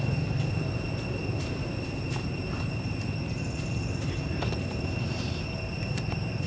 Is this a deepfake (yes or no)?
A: no